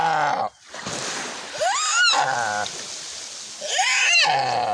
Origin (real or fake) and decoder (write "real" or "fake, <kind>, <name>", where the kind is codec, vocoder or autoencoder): real